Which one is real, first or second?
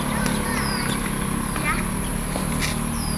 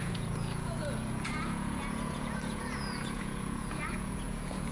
first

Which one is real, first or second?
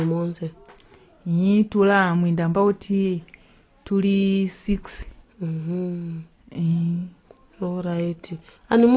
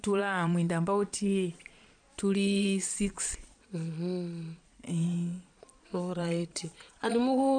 first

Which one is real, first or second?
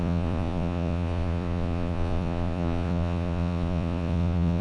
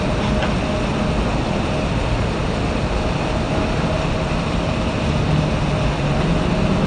second